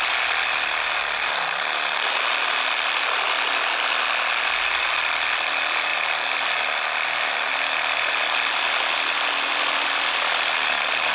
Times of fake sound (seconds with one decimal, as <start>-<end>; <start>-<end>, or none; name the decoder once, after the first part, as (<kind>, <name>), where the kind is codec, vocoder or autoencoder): none